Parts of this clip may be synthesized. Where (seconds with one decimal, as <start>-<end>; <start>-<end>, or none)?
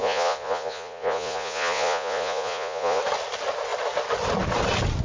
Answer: 0.0-3.0